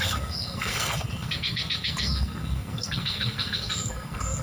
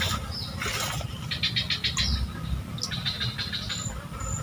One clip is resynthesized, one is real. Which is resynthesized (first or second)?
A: first